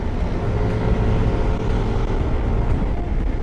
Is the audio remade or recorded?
recorded